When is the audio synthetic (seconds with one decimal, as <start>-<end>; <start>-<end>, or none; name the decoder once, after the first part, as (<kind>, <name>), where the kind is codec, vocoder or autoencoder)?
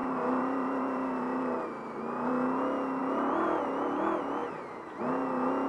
0.0-2.3 (vocoder, BigVGAN v2); 3.0-3.6; 4.4-5.0